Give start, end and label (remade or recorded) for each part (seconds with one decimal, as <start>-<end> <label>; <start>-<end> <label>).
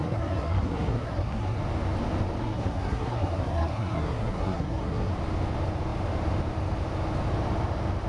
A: 0.0-1.6 remade; 1.6-2.4 recorded; 2.4-5.1 remade; 5.1-8.1 recorded